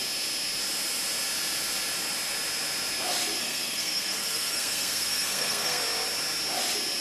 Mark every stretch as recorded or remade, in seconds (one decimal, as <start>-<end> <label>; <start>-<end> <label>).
0.0-3.4 recorded; 3.4-5.8 remade; 5.8-7.0 recorded